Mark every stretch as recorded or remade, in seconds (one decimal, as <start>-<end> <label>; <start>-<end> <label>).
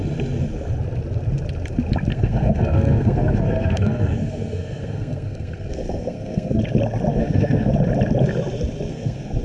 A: 0.0-2.1 recorded; 2.1-6.6 remade; 6.6-7.1 recorded; 7.1-7.7 remade; 7.7-8.9 recorded; 8.9-9.4 remade